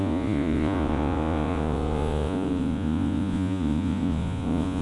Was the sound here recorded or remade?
remade